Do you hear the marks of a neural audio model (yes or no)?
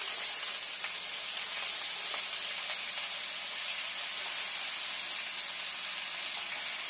no